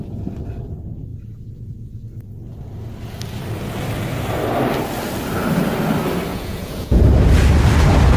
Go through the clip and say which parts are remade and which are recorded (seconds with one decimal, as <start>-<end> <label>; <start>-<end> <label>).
0.0-6.3 recorded; 6.3-7.0 remade; 7.0-8.2 recorded